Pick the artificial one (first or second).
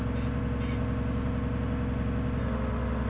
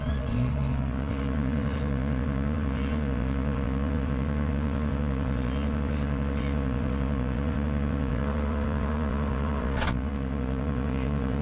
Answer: second